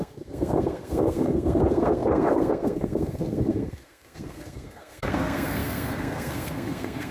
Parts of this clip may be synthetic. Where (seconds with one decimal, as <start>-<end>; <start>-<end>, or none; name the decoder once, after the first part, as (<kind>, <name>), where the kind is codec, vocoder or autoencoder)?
0.0-7.1 (codec, SNAC)